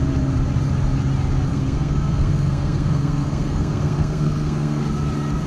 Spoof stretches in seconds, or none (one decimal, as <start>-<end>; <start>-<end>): 1.5-4.8